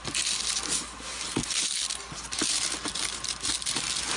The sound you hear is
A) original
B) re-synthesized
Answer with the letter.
A